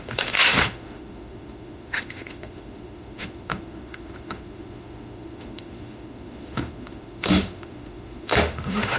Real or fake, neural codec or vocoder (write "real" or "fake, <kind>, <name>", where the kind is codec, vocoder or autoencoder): fake, autoencoder, DAC-VAE